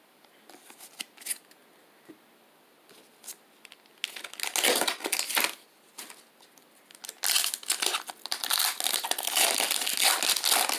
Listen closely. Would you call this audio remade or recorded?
recorded